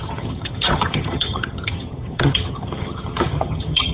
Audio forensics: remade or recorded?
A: remade